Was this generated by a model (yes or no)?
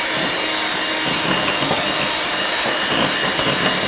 no